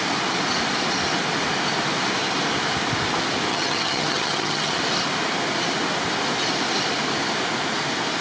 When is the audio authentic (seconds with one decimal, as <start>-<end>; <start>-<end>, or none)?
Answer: 0.0-3.5; 4.8-8.2